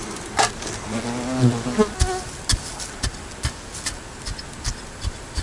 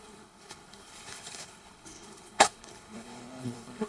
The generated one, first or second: second